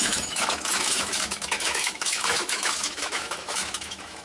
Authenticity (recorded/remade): remade